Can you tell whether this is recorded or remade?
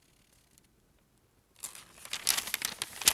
recorded